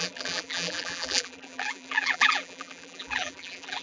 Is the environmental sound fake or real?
fake